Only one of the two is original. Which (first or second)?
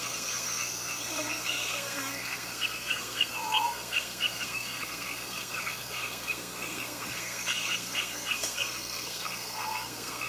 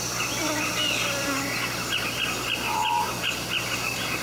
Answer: second